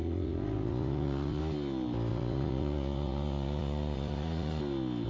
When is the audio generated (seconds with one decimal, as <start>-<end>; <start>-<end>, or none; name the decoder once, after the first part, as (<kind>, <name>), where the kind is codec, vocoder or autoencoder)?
0.0-1.4 (vocoder, Vocos); 2.1-4.6